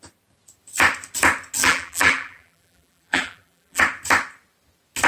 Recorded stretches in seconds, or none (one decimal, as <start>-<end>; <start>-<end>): 0.0-1.6; 3.8-5.1